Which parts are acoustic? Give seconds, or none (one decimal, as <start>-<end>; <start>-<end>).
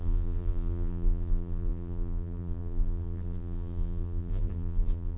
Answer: none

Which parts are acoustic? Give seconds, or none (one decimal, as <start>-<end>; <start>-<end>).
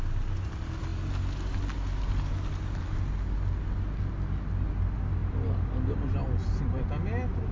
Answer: 0.0-7.5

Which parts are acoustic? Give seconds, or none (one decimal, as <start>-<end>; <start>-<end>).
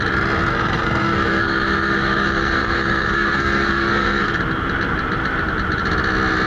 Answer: 0.0-0.5; 4.4-6.5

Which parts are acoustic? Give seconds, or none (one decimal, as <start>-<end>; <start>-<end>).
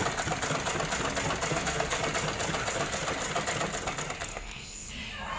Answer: 0.0-1.5; 2.0-4.3; 4.9-5.4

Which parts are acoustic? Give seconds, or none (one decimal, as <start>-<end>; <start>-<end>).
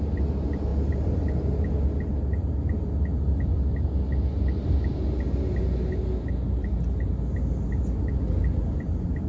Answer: 0.0-9.3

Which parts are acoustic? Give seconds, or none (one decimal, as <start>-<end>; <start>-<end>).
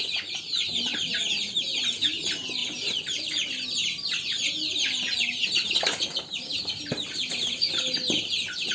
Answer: 0.0-8.7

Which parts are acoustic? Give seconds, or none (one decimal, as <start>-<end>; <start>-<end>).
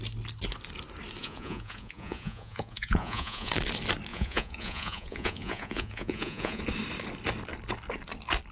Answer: 0.0-1.2; 3.5-4.1; 6.6-8.5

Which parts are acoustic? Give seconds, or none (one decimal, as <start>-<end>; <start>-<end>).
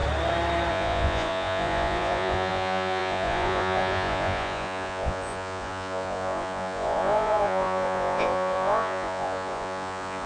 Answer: 0.0-0.7